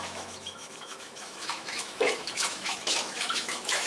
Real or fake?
fake